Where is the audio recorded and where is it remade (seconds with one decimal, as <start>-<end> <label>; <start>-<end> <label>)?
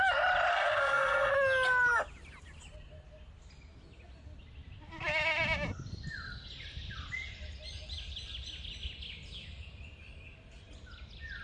0.0-0.5 recorded; 0.5-1.3 remade; 1.3-11.4 recorded